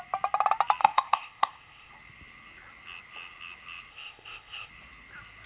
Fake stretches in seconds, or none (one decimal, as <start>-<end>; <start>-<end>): 0.8-1.9; 3.9-4.7

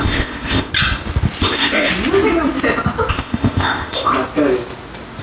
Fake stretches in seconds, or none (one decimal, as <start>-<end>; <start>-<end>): 0.0-0.7; 1.4-1.9; 3.1-4.1

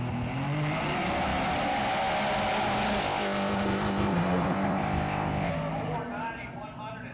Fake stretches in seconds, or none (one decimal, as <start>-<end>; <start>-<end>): 3.0-5.5

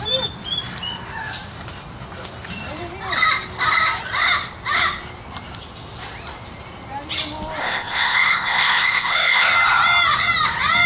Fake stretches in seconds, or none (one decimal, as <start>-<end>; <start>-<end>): 7.6-9.5

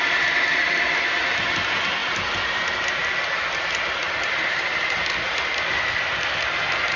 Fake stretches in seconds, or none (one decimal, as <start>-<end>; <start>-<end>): none

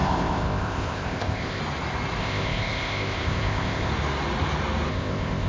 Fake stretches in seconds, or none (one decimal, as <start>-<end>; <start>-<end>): 0.0-1.6; 2.2-3.9; 4.9-5.5